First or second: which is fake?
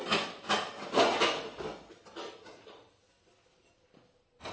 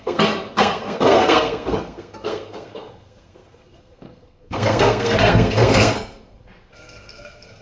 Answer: second